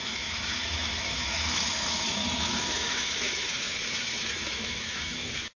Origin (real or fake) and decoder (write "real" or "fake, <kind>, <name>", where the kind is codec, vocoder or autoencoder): fake, autoencoder, DAC-VAE